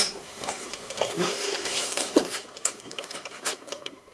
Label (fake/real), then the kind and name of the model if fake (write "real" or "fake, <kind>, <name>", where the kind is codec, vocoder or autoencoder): fake, codec, SNAC